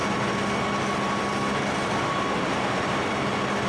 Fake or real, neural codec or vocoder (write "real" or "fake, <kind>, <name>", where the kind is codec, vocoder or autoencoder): real